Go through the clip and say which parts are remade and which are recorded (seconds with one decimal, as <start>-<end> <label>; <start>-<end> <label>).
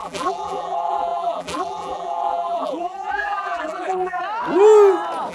0.0-4.2 remade; 4.2-5.3 recorded